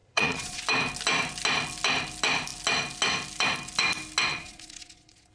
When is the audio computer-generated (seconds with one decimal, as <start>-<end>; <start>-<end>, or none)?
0.0-0.6; 4.3-5.3